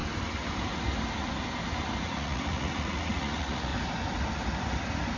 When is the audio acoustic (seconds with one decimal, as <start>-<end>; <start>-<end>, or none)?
0.0-2.0; 3.7-5.2